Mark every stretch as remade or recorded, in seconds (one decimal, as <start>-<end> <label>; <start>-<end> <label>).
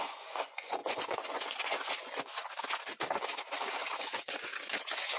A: 0.0-2.4 remade; 2.4-3.7 recorded; 3.7-4.5 remade; 4.5-5.2 recorded